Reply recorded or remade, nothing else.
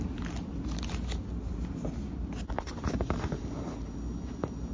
recorded